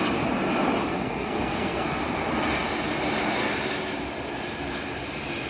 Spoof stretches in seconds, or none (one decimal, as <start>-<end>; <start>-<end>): 0.9-2.0